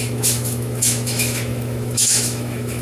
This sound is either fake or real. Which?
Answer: fake